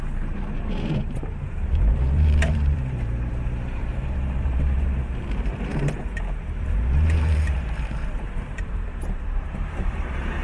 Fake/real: fake